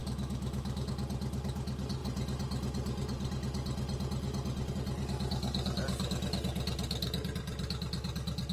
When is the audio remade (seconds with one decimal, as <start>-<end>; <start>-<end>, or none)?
0.0-0.9